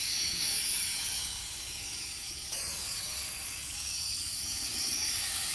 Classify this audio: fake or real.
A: fake